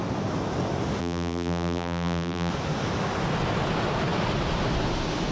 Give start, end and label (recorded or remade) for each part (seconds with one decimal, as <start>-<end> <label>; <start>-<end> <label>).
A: 0.0-1.0 recorded; 1.0-2.5 remade; 2.5-5.3 recorded